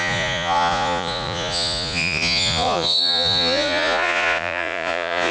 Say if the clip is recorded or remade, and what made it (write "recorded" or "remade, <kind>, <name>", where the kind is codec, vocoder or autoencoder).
remade, vocoder, Vocos